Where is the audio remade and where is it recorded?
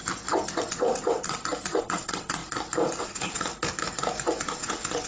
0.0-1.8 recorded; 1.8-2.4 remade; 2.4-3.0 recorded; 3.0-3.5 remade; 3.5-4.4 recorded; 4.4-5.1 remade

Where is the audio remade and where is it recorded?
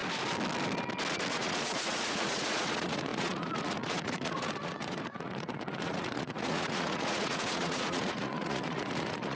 0.0-1.3 recorded; 1.3-9.3 remade